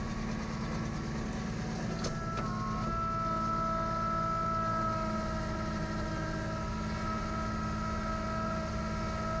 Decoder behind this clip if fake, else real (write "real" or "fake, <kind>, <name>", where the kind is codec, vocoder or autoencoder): real